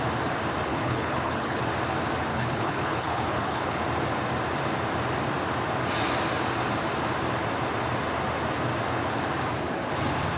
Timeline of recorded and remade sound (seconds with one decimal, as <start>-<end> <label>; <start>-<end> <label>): 0.0-0.7 recorded; 0.7-1.6 remade; 1.6-2.3 recorded; 2.3-3.8 remade; 3.8-10.4 recorded